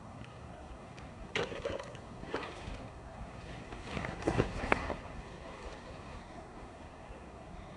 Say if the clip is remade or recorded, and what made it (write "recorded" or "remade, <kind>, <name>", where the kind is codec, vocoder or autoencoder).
remade, codec, SNAC